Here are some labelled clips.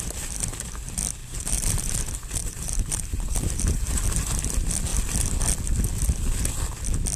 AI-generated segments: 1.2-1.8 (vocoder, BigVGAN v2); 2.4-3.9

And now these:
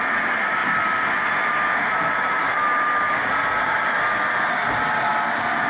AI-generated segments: 0.6-4.0 (vocoder, BigVGAN v2); 5.1-5.7

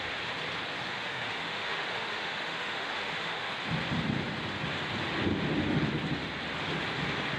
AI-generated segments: 0.9-3.5 (autoencoder, DAC-VAE)

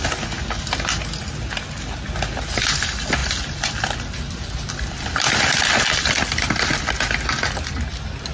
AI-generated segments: 3.2-6.9 (vocoder, BigVGAN v2)